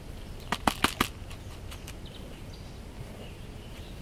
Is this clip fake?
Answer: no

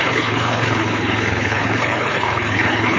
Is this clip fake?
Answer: yes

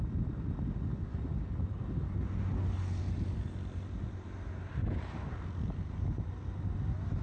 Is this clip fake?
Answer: no